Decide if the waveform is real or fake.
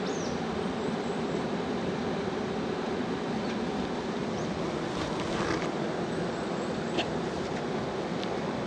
real